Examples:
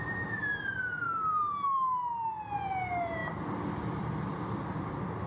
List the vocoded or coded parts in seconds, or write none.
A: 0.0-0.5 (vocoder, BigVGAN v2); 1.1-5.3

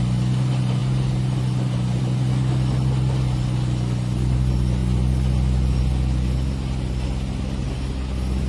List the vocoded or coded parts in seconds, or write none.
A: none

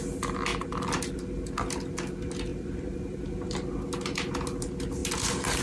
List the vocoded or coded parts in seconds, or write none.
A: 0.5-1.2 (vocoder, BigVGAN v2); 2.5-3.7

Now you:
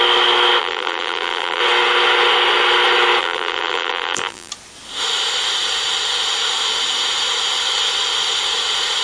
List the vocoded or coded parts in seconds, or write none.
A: 0.6-1.6 (vocoder, BigVGAN v2); 3.2-4.5